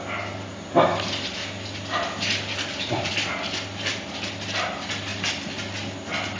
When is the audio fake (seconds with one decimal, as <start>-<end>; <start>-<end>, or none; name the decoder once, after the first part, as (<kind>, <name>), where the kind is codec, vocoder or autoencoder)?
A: none